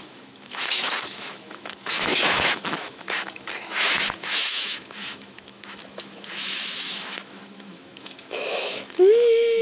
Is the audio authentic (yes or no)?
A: no